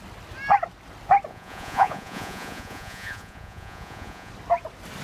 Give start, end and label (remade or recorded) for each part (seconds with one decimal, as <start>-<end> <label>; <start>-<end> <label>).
0.0-1.3 recorded; 1.3-4.3 remade; 4.3-5.0 recorded